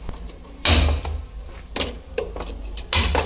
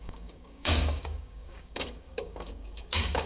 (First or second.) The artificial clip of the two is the second